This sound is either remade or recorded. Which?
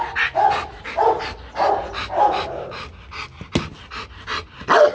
recorded